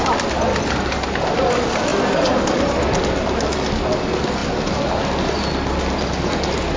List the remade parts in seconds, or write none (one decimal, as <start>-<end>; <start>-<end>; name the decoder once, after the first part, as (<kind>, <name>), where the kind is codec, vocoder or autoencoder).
none